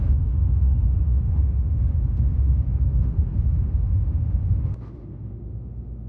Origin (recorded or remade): remade